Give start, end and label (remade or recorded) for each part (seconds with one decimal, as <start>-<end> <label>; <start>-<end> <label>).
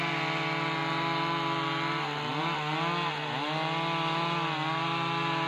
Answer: 0.0-5.5 recorded